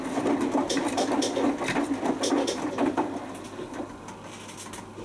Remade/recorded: recorded